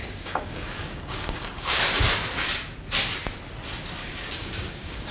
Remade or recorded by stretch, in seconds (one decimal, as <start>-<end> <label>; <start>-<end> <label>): 0.0-1.8 remade; 1.8-4.0 recorded; 4.0-5.1 remade